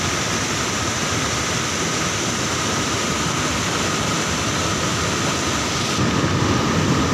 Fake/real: real